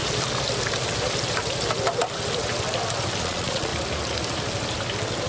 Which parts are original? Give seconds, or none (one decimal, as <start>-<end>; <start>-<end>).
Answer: 0.0-3.2; 3.7-5.3